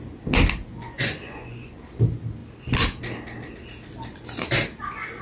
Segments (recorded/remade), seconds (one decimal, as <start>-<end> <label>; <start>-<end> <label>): 0.0-0.7 recorded; 0.7-1.8 remade; 1.8-5.2 recorded